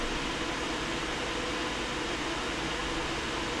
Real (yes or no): yes